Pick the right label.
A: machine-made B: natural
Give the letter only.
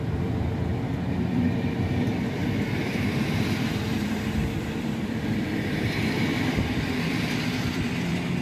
A